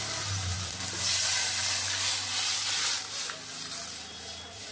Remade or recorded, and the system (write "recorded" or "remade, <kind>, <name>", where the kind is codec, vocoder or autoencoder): recorded